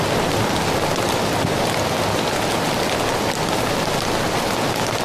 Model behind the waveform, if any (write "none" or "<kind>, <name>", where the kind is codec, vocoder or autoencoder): none